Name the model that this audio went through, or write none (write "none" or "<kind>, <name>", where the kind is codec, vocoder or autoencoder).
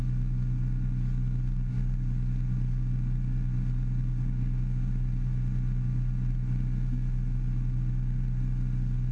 none